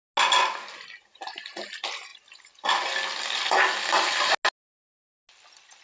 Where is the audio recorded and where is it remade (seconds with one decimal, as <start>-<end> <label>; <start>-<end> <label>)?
0.0-5.8 recorded